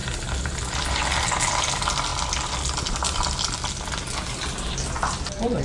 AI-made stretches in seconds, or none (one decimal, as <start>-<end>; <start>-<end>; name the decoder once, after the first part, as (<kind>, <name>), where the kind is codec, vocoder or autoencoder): none